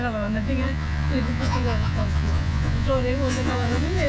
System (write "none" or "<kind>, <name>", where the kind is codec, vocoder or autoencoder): vocoder, Vocos